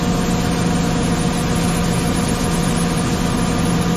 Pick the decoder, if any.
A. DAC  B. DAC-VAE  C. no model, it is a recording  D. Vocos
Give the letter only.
C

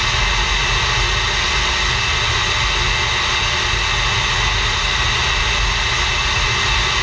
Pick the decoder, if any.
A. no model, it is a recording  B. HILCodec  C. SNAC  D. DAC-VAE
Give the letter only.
A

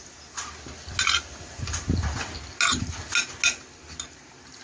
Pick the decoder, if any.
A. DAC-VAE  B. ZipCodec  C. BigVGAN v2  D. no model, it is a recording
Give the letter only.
D